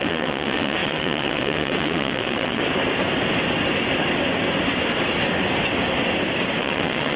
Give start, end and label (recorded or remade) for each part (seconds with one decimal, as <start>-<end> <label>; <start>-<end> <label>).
0.0-2.6 remade; 2.6-6.6 recorded; 6.6-7.2 remade